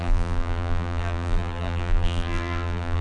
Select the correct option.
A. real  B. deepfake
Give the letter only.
B